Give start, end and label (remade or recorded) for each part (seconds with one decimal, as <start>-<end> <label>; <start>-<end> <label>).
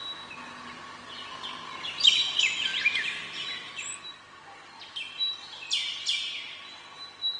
0.0-2.7 recorded; 2.7-3.7 remade; 3.7-7.4 recorded